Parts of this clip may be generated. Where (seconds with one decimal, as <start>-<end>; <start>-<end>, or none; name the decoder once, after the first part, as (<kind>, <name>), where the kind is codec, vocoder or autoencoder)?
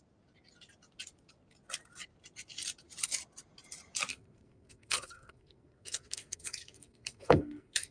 4.1-7.9 (codec, SNAC)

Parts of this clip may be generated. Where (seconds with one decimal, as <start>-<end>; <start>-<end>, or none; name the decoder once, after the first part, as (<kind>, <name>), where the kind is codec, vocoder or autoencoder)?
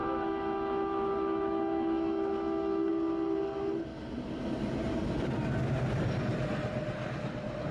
0.0-2.9 (autoencoder, DAC-VAE)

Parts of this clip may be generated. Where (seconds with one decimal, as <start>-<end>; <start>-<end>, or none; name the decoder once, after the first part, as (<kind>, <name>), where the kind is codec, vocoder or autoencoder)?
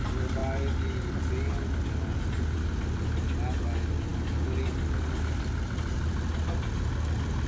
none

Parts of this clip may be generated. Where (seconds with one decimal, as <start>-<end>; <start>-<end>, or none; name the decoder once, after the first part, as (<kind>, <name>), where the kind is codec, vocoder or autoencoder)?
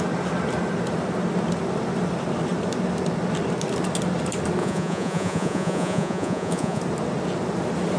4.6-6.8 (vocoder, Vocos)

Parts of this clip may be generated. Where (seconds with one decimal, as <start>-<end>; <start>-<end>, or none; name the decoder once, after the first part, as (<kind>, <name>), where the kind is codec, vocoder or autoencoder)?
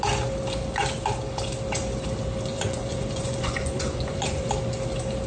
2.5-4.5 (vocoder, Vocos)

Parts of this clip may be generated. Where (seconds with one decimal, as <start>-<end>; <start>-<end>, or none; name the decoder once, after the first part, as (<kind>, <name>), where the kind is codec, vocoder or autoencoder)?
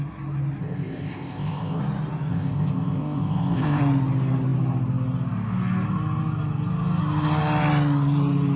0.6-1.8 (codec, ZipCodec); 2.3-3.8